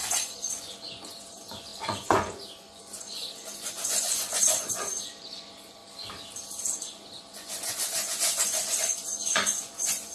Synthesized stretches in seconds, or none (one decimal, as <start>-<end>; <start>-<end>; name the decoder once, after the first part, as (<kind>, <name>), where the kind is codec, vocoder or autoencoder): 0.0-5.8 (vocoder, Vocos); 6.8-10.1